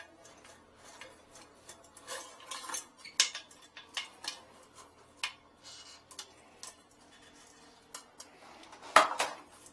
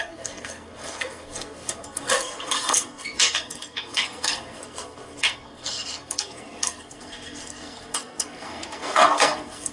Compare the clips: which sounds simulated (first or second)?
second